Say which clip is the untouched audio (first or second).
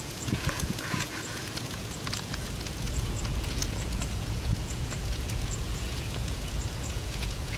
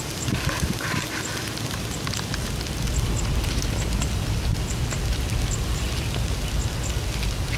second